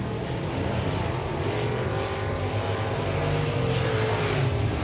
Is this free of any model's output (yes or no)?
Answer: yes